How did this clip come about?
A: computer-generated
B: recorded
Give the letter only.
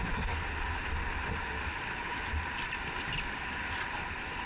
B